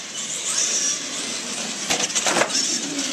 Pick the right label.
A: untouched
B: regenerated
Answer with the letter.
B